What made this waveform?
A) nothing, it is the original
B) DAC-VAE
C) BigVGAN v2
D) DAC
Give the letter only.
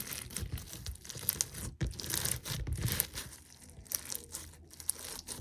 A